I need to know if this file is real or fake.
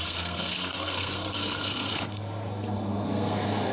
fake